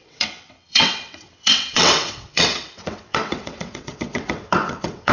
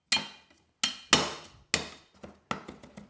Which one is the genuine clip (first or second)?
second